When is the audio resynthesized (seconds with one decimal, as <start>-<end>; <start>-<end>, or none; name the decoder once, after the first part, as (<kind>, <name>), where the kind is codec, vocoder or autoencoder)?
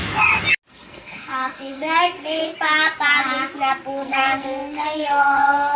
0.7-2.4 (codec, SNAC); 3.9-5.8